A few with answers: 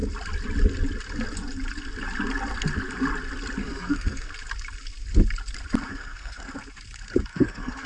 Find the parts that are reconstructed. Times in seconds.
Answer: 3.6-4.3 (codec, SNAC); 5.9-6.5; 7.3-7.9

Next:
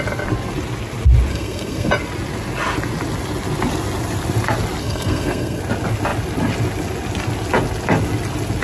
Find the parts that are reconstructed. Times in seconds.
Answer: 1.3-1.9 (codec, SNAC); 4.8-5.6

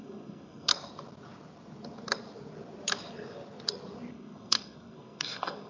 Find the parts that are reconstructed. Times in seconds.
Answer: 0.0-0.7 (codec, SNAC); 4.1-5.7

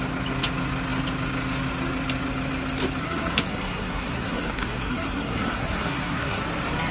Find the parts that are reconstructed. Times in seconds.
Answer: 3.0-6.4 (codec, SNAC)